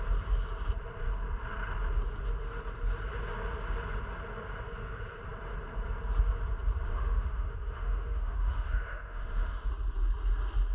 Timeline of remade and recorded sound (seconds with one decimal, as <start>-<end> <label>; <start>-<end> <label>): 0.0-6.9 recorded; 6.9-9.7 remade; 9.7-10.7 recorded